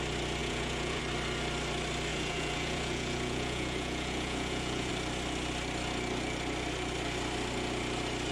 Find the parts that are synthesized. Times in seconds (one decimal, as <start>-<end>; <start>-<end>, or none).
0.4-1.0; 2.1-4.9